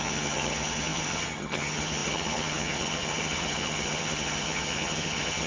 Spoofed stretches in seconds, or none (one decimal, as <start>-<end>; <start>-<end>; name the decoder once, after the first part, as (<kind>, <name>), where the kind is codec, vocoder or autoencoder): 0.0-5.5 (vocoder, HiFi-GAN)